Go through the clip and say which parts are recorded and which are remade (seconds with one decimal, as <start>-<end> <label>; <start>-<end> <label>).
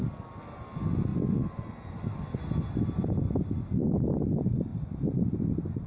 0.0-5.9 recorded